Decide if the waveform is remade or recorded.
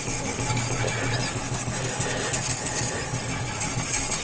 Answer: recorded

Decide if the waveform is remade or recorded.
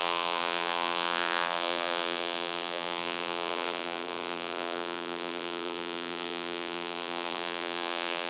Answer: remade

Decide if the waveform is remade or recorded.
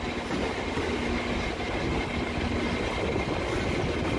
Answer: recorded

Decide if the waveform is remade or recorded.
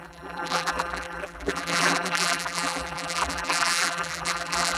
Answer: remade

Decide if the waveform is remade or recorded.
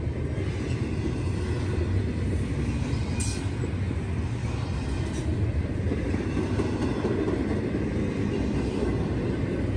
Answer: recorded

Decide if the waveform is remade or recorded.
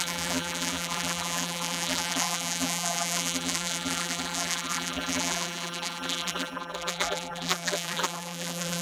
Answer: remade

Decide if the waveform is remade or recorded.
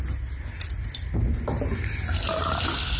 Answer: recorded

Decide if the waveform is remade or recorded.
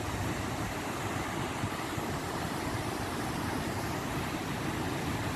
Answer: recorded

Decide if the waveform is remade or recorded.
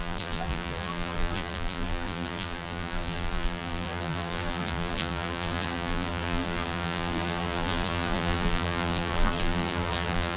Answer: remade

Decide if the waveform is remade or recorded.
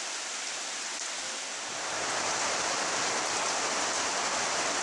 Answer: recorded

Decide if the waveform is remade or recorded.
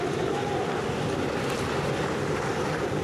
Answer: recorded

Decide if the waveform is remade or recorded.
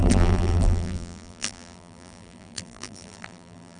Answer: remade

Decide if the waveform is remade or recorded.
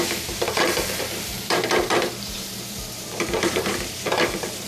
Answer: remade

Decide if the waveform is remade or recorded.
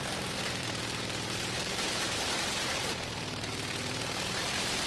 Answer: remade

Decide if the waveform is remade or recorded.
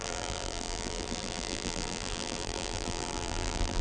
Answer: remade